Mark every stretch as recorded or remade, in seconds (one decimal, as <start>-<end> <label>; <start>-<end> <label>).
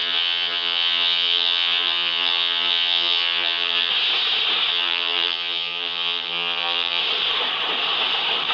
0.0-3.9 remade; 3.9-4.7 recorded; 4.7-7.0 remade; 7.0-8.5 recorded